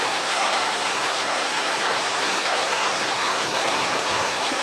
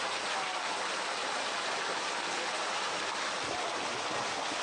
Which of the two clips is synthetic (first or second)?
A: first